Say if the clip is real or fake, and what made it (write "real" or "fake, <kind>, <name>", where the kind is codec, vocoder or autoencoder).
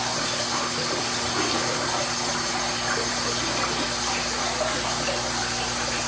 real